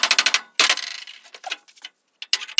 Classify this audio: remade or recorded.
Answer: recorded